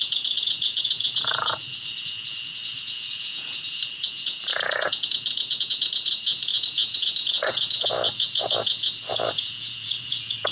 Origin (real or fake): fake